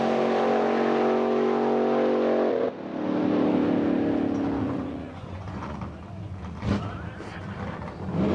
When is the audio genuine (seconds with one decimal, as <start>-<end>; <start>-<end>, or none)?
0.0-4.6; 5.8-8.3